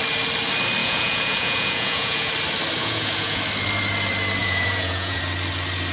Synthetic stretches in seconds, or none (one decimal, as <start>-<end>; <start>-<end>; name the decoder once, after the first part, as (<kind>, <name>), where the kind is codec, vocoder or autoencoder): 0.8-2.3 (vocoder, Vocos); 2.8-3.4; 4.4-5.2